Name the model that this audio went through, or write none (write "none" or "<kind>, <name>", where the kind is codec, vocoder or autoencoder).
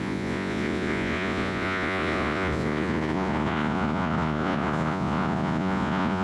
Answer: vocoder, Vocos